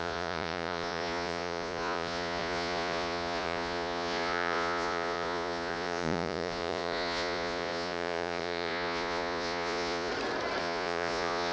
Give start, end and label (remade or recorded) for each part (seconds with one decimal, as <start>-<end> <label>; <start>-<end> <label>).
0.0-10.1 remade; 10.1-10.6 recorded; 10.6-11.5 remade